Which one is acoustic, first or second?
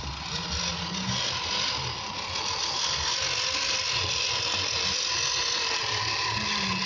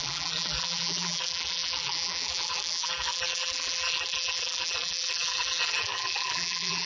first